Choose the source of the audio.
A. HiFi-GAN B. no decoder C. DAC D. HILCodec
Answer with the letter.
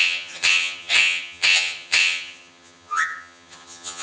A